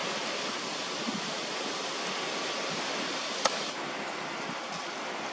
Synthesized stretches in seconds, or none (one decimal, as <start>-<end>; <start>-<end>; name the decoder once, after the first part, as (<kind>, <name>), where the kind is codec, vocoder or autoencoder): none